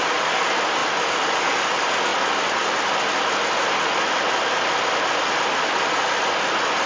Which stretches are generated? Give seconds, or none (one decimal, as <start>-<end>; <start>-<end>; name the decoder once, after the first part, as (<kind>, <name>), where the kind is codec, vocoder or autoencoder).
none